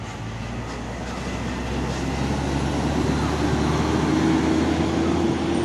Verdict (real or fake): real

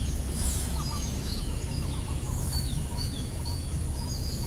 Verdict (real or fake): fake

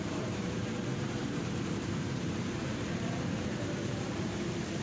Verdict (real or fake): fake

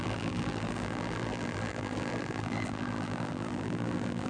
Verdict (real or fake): fake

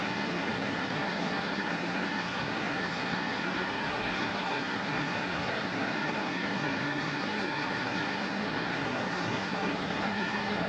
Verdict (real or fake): fake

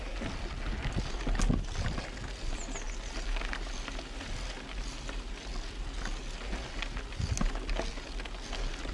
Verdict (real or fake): real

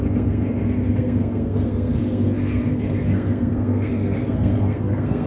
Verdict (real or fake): fake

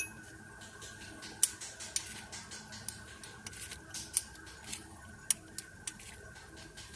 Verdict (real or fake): real